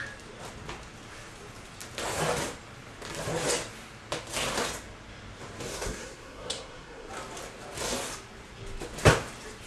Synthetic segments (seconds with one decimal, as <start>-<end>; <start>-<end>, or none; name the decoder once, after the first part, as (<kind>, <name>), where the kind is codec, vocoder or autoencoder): 5.7-7.1 (codec, SNAC)